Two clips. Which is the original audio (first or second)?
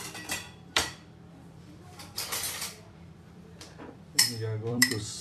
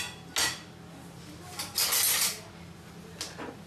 second